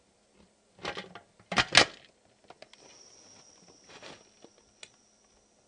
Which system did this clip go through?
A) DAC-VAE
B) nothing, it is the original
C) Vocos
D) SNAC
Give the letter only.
B